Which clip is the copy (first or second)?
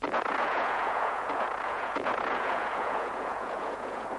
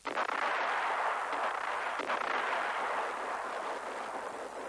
first